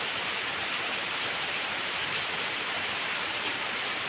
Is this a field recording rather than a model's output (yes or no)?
no